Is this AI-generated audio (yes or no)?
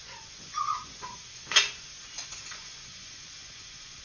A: yes